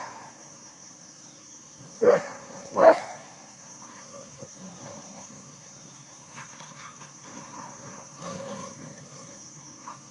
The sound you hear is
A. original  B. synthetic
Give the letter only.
B